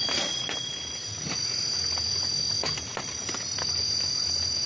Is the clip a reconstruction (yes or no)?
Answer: no